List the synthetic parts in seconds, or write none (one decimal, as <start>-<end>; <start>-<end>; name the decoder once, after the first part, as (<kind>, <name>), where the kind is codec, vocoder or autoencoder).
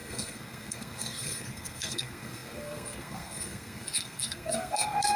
0.0-5.2 (codec, SNAC)